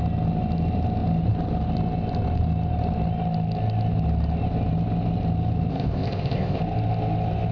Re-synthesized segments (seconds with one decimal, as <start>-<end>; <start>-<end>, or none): 5.7-6.6